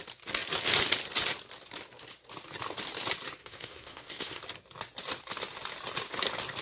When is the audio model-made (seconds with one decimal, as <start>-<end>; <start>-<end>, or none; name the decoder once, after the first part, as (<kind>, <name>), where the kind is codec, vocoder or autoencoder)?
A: 3.4-4.4 (codec, SNAC)